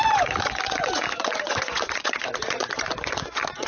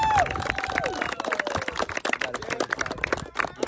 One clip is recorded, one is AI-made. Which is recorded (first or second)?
second